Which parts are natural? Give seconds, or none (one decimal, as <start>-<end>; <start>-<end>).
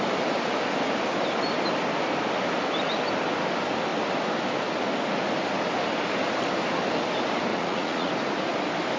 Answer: 0.0-7.5; 8.1-9.0